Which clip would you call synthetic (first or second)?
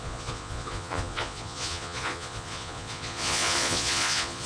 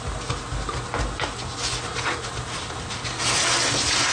first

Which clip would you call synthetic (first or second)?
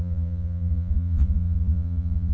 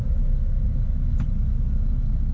first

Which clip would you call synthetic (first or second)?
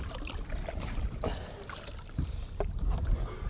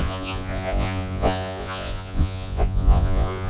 second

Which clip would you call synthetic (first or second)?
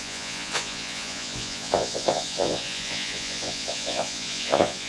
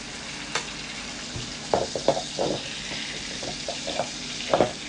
first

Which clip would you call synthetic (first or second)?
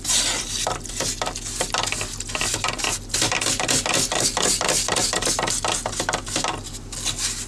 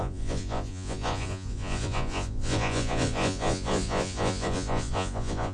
second